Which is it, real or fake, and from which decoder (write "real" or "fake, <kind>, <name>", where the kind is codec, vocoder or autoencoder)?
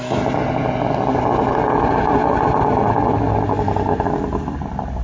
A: real